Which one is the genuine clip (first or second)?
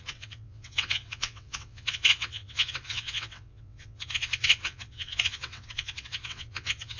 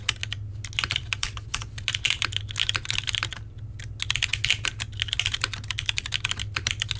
second